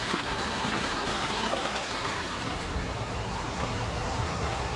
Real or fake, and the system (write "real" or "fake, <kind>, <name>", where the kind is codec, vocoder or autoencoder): fake, codec, SNAC